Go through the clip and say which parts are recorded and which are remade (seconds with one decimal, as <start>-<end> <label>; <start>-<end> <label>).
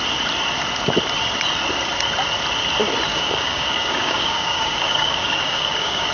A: 0.0-3.1 recorded; 3.1-6.1 remade